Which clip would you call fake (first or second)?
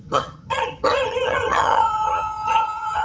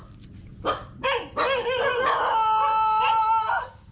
first